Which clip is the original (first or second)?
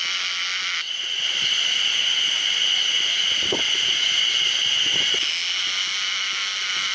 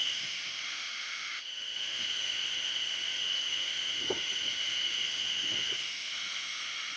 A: first